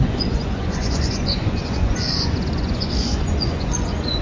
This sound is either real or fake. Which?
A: fake